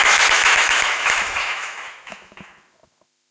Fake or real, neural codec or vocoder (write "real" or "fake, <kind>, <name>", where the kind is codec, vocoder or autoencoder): fake, autoencoder, DAC-VAE